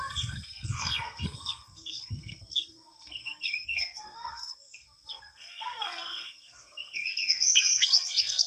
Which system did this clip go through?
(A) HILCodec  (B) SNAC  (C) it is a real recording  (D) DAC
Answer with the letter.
B